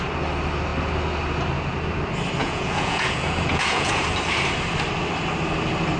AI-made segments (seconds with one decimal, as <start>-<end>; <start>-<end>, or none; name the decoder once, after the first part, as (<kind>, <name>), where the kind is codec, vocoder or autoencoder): 2.4-4.0 (vocoder, Vocos)